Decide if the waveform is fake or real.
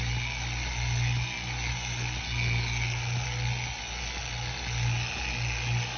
real